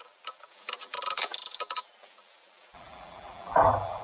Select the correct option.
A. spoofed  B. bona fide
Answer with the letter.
A